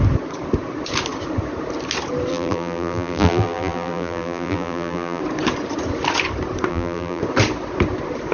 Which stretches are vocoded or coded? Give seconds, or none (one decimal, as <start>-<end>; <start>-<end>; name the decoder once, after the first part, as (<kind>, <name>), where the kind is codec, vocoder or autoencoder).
2.3-5.2 (vocoder, BigVGAN v2); 6.7-7.2